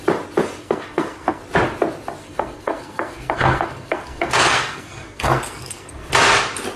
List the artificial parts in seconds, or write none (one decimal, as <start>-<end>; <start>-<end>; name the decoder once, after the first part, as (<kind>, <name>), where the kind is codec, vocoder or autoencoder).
0.6-1.4 (codec, SNAC); 2.2-6.1